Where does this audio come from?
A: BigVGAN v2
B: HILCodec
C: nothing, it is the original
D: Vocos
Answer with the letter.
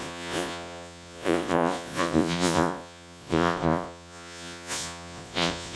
D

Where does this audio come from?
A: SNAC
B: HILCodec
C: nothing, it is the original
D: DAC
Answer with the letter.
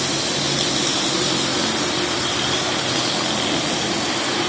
C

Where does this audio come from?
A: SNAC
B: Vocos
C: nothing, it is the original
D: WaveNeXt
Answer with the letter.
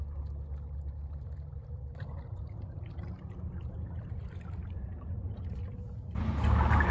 C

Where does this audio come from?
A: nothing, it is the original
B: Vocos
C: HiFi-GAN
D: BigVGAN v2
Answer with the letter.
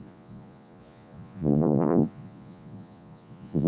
B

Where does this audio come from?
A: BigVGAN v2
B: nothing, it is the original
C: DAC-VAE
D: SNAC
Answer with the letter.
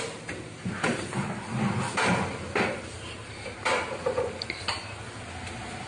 B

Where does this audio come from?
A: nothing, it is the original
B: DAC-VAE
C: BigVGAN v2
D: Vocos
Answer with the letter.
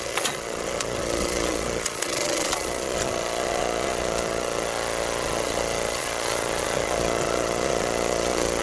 D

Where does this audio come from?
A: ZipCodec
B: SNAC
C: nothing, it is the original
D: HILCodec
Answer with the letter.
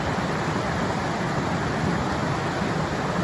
C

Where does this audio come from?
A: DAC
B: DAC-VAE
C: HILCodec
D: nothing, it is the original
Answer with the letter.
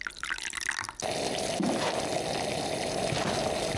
D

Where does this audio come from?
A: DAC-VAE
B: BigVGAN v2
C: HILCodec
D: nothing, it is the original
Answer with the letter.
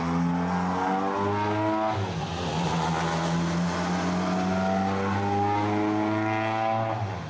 D